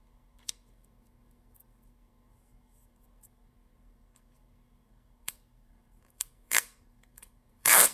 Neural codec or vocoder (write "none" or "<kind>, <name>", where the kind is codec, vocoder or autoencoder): codec, SNAC